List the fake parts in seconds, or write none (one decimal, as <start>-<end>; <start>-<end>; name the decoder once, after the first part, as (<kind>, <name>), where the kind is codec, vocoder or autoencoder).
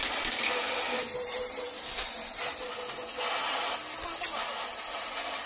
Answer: 0.0-2.7 (vocoder, BigVGAN v2); 4.7-5.5